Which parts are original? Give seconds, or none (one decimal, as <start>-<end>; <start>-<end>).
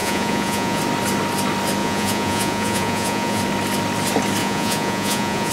0.8-1.8; 3.4-4.4